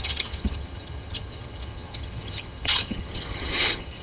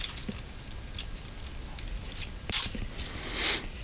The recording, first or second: second